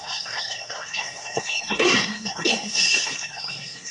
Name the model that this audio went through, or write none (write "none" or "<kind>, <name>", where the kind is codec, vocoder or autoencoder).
codec, SNAC